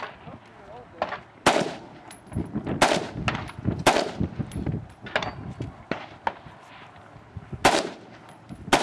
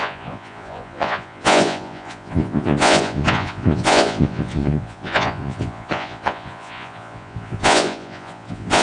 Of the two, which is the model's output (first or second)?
second